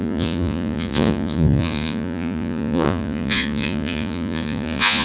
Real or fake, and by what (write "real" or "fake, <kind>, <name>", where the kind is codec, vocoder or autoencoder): fake, vocoder, Vocos